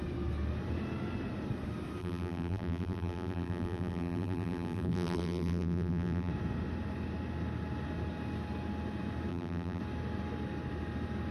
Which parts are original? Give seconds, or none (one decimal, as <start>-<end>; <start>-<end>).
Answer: 0.0-2.0; 6.3-9.3; 9.8-11.3